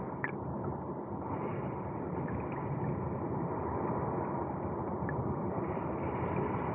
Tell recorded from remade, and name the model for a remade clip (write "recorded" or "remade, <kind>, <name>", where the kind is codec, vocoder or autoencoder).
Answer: recorded